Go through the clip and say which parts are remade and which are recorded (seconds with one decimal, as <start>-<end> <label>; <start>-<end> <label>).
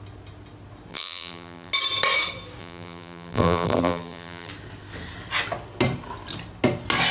0.0-0.9 recorded; 0.9-1.7 remade; 1.7-2.6 recorded; 2.6-4.5 remade; 4.5-7.1 recorded